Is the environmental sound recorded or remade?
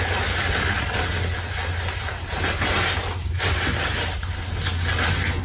recorded